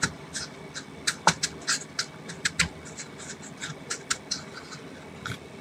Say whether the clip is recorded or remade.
recorded